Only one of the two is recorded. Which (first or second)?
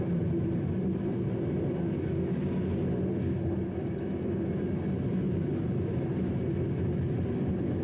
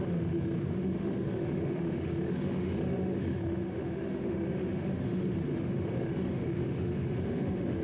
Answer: first